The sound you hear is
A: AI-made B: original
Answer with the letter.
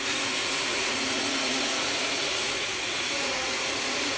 A